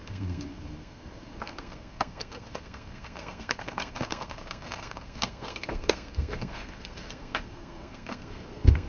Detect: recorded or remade remade